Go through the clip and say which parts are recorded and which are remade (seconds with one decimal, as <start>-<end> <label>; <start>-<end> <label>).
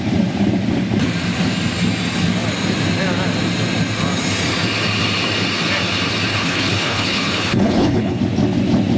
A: 0.0-6.3 recorded; 6.3-8.2 remade; 8.2-9.0 recorded